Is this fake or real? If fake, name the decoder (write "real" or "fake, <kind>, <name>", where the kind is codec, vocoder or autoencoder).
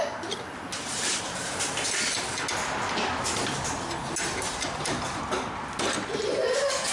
real